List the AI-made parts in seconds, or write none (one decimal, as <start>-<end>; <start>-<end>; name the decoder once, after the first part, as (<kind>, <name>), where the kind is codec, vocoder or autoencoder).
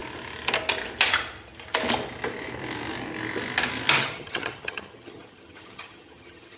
4.0-6.6 (vocoder, HiFi-GAN)